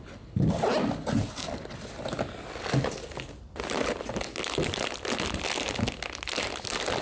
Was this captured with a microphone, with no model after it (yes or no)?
yes